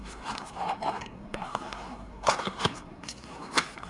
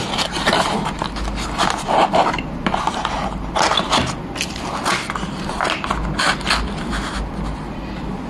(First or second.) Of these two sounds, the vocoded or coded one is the first